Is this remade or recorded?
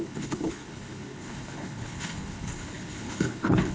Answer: remade